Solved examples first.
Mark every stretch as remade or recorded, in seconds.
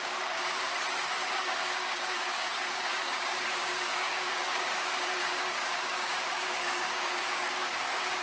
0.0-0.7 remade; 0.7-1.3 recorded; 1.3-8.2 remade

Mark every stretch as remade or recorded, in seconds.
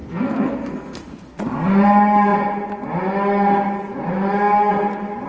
0.0-1.4 remade; 1.4-5.3 recorded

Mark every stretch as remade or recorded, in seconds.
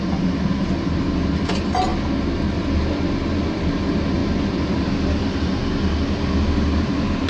0.0-7.3 recorded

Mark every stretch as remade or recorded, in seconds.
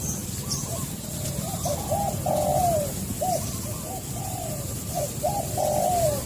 0.0-6.3 recorded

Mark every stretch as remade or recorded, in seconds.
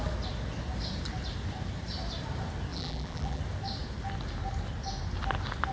0.0-2.7 recorded; 2.7-3.4 remade; 3.4-5.7 recorded